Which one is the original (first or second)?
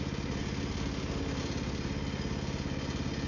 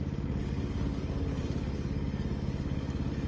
first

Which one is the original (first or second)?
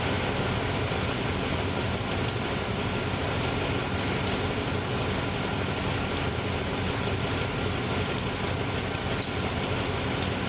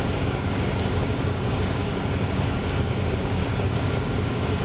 first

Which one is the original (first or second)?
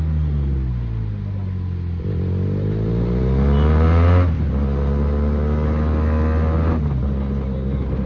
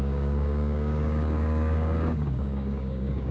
first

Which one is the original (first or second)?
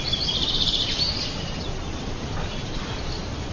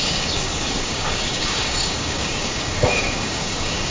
first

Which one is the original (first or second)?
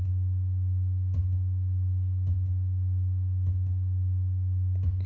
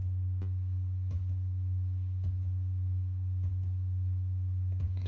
first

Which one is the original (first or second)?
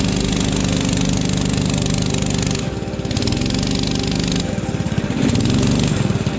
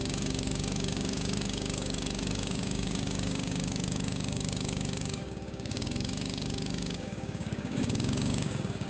first